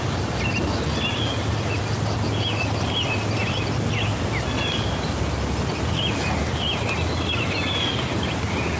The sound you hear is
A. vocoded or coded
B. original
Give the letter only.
B